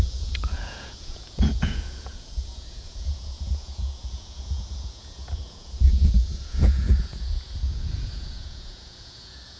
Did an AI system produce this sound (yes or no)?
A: yes